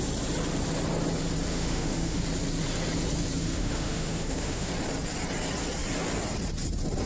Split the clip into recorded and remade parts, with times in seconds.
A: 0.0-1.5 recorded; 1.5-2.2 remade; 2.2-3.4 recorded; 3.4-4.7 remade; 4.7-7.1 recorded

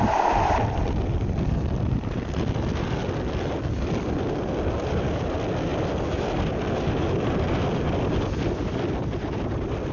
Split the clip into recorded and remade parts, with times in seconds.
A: 0.0-9.9 recorded

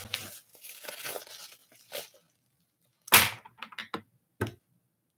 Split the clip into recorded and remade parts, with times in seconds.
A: 0.0-0.5 recorded; 0.5-1.2 remade; 1.2-5.2 recorded